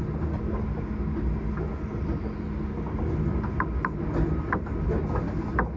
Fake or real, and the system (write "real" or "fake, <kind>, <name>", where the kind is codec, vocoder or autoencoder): real